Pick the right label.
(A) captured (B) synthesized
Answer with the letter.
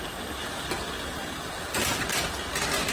A